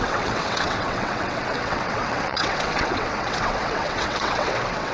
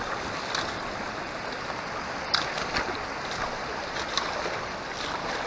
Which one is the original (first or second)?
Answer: second